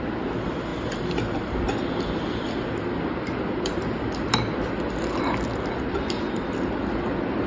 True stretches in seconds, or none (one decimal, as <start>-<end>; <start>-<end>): 0.0-7.5